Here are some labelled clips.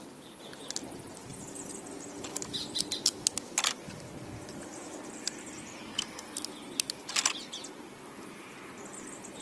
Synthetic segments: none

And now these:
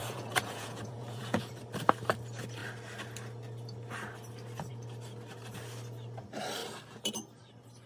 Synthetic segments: 0.0-1.6 (vocoder, Vocos)

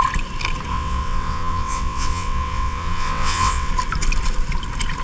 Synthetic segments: 0.7-3.7 (vocoder, WaveNeXt)

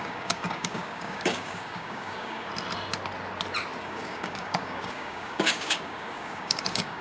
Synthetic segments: 0.0-2.5 (codec, DAC); 3.8-7.0

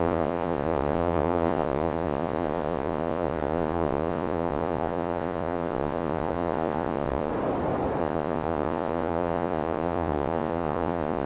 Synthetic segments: 0.0-7.3 (vocoder, Vocos); 8.0-11.3